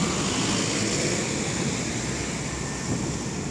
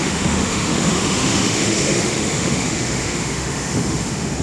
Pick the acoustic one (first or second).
first